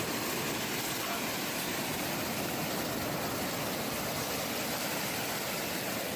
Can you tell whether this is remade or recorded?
recorded